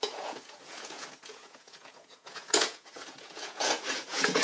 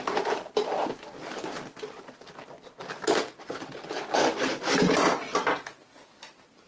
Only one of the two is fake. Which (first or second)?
first